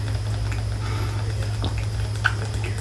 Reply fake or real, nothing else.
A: real